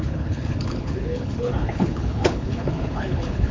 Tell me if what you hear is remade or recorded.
remade